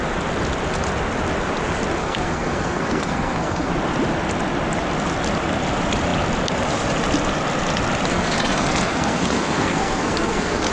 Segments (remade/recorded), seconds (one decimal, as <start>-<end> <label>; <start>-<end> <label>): 0.0-2.0 recorded; 2.0-3.7 remade; 3.7-8.1 recorded; 8.1-10.7 remade